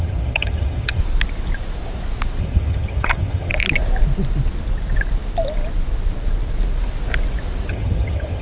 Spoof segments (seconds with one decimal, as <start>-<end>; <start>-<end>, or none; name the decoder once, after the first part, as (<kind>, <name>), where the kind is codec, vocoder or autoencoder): 0.0-1.0 (vocoder, HiFi-GAN); 2.4-3.5; 7.7-8.4